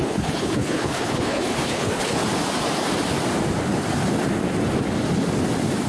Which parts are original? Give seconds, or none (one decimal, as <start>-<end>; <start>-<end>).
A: 2.2-5.9